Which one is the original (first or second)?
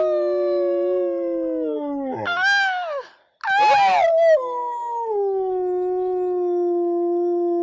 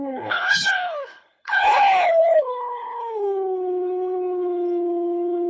first